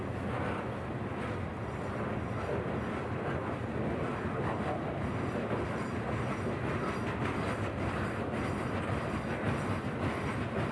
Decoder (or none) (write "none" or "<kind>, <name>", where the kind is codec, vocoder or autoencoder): none